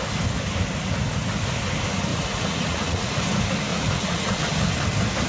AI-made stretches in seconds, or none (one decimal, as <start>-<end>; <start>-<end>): 2.1-3.2; 3.7-4.4